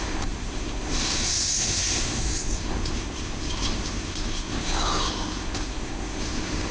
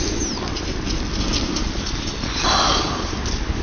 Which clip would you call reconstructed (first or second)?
first